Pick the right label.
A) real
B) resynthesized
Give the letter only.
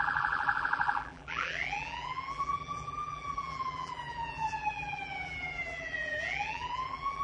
B